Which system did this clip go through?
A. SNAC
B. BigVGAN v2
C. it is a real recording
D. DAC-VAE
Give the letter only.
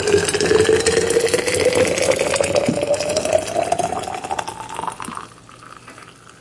C